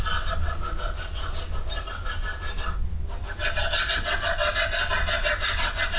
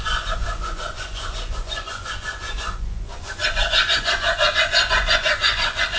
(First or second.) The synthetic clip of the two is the second